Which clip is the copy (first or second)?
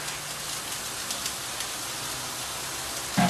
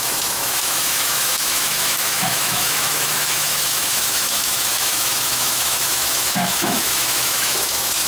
second